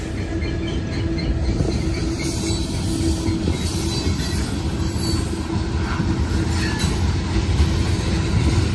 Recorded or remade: recorded